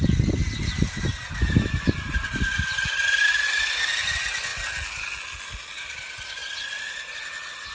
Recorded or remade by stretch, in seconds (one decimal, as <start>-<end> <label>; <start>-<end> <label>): 0.0-7.7 recorded